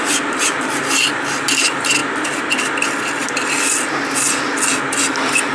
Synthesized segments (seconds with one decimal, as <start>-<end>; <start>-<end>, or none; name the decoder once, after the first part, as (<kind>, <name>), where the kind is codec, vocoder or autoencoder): none